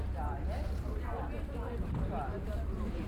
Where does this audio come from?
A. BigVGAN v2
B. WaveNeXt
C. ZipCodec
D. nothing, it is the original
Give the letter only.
A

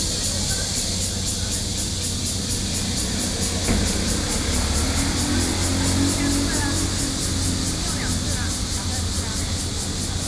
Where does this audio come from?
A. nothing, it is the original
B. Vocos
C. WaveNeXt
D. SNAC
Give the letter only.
A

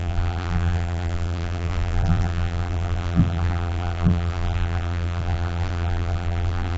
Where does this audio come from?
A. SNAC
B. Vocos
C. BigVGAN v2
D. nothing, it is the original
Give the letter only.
C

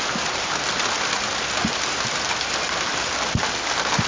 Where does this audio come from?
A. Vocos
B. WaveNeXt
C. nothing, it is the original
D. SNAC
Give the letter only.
C